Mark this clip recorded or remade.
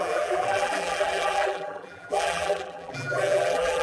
remade